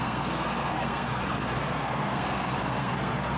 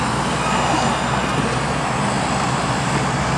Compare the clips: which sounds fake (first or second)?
first